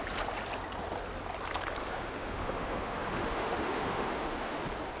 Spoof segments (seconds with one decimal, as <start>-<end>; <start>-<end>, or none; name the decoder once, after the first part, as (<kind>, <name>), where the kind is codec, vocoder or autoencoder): 1.8-4.6 (autoencoder, DAC-VAE)